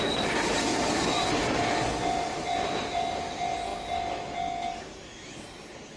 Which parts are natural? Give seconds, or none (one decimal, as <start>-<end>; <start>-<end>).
0.7-2.3; 3.7-5.3

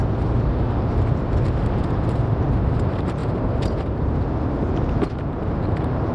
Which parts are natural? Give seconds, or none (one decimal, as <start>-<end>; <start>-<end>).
3.2-4.7

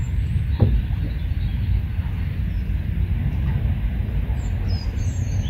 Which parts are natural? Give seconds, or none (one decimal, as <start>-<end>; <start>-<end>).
1.5-4.8

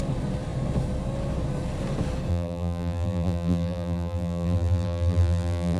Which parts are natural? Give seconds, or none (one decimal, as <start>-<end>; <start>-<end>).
0.0-2.3

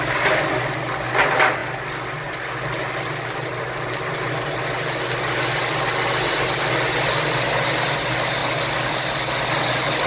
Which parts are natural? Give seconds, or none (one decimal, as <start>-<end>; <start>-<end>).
0.0-10.1

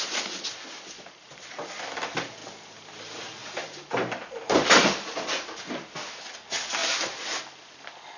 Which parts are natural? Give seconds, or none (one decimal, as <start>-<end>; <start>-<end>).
0.0-1.2; 1.8-3.4; 4.3-6.8; 7.4-8.2

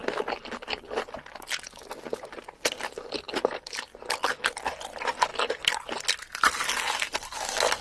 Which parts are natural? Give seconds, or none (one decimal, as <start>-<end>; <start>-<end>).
0.0-3.3; 3.9-4.6; 5.3-7.8

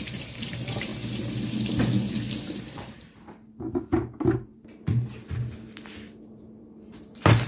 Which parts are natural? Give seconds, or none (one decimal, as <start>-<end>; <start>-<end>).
0.9-2.3